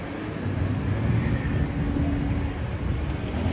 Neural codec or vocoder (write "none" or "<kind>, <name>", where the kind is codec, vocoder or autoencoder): none